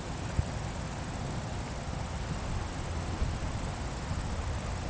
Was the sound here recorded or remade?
recorded